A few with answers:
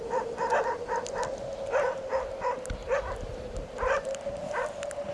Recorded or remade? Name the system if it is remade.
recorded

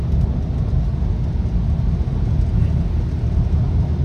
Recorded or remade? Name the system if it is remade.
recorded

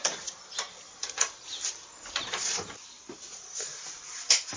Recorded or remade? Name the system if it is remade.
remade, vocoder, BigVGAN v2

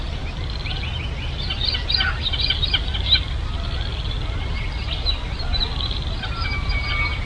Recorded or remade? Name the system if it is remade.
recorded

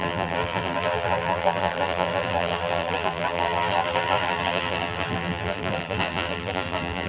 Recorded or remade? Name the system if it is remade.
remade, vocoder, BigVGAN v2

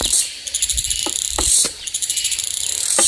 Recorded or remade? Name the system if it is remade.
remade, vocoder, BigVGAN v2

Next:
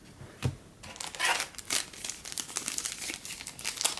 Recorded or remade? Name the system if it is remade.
recorded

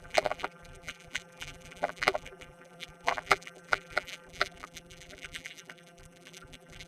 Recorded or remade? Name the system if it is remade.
remade, vocoder, BigVGAN v2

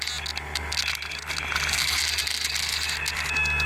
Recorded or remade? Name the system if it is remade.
recorded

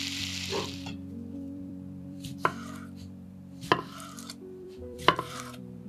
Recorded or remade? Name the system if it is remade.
remade, vocoder, BigVGAN v2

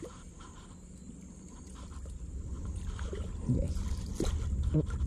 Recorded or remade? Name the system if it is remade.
remade, vocoder, BigVGAN v2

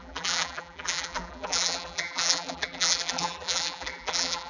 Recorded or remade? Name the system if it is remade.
remade, vocoder, BigVGAN v2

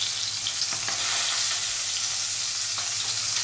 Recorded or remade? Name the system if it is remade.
recorded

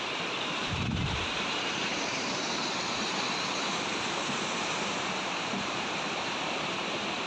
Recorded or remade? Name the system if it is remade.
remade, vocoder, BigVGAN v2